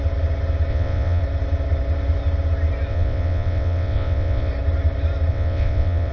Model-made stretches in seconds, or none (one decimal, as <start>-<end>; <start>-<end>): 0.7-1.2; 2.9-4.5; 5.3-6.1